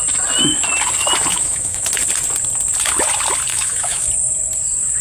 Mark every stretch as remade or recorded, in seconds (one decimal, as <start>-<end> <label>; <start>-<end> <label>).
0.0-1.3 recorded; 1.3-1.9 remade; 1.9-3.5 recorded; 3.5-4.1 remade; 4.1-5.0 recorded